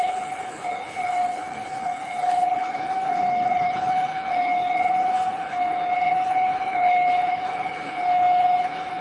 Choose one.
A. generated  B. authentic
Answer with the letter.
A